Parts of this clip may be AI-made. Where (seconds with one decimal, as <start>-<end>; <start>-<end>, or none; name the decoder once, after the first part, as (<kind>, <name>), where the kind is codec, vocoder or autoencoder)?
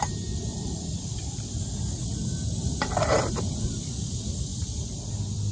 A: 0.5-1.6 (vocoder, BigVGAN v2); 4.5-5.1